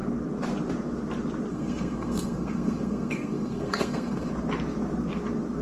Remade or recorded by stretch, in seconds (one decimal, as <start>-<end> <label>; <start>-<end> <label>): 0.0-1.5 recorded; 1.5-4.3 remade; 4.3-5.6 recorded